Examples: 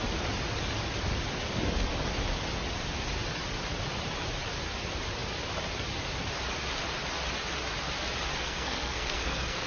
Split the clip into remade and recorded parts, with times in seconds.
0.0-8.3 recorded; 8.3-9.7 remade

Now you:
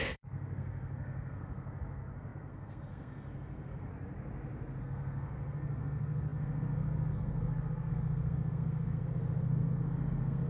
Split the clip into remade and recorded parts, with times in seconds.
0.0-3.9 remade; 3.9-4.8 recorded; 4.8-10.5 remade

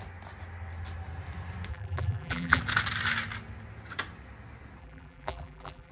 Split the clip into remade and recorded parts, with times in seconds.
0.0-1.7 recorded; 1.7-2.6 remade; 2.6-4.8 recorded; 4.8-5.9 remade

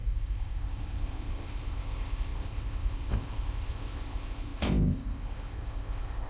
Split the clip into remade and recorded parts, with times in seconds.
0.0-6.3 remade